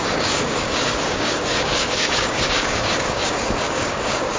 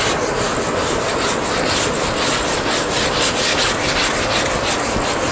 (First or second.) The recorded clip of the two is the second